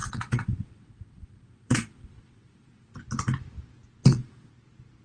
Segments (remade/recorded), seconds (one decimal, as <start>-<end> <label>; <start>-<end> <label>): 0.0-3.0 remade; 3.0-4.0 recorded; 4.0-4.5 remade; 4.5-5.0 recorded